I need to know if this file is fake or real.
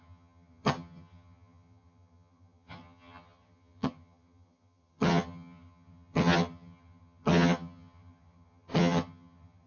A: fake